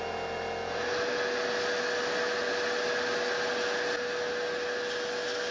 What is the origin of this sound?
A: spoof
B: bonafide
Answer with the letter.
B